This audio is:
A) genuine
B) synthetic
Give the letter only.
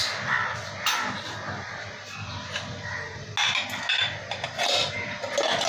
A